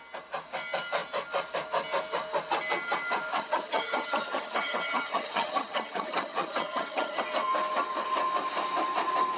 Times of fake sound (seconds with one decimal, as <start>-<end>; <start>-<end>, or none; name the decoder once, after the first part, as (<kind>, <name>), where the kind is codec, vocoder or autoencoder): 3.3-7.2 (vocoder, HiFi-GAN)